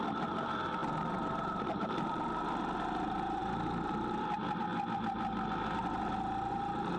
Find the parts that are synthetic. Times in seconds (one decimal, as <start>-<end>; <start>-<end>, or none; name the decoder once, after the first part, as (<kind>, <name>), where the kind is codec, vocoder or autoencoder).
none